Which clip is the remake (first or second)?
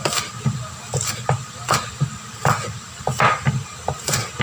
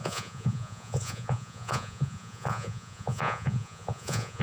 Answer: second